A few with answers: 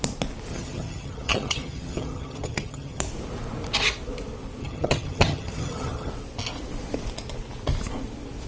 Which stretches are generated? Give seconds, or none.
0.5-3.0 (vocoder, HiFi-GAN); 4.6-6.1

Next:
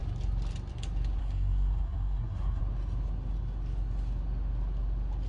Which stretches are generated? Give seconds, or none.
1.2-2.6 (codec, SNAC)

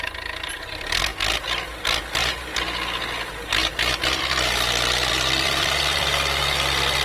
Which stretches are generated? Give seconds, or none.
0.0-1.1 (vocoder, BigVGAN v2); 1.8-2.2; 3.1-7.0

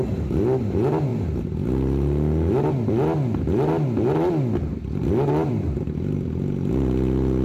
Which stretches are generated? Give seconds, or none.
none